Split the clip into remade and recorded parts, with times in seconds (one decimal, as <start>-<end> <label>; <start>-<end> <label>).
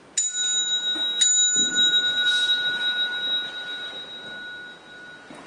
0.0-5.5 recorded